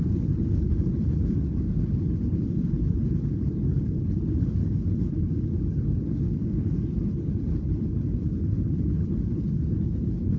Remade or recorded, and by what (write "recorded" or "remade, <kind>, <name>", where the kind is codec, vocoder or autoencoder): remade, codec, HILCodec